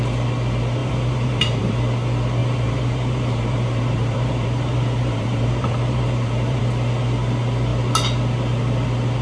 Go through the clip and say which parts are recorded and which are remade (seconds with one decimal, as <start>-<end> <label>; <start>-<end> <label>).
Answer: 0.0-0.8 recorded; 0.8-1.8 remade; 1.8-2.4 recorded; 2.4-6.6 remade; 6.6-9.2 recorded